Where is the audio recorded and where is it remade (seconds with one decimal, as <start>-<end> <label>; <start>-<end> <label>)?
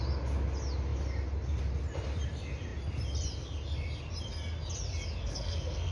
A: 0.0-5.2 recorded; 5.2-5.9 remade